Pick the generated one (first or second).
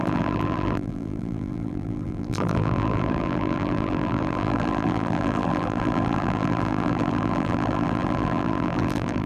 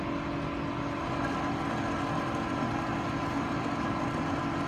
first